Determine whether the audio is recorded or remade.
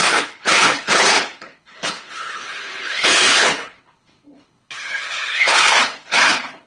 remade